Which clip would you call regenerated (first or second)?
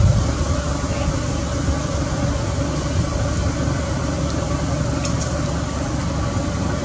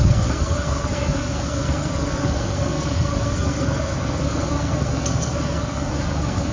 second